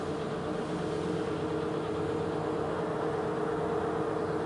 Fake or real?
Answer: real